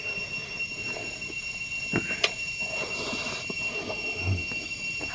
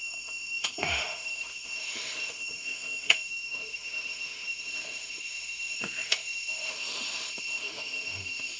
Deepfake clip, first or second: second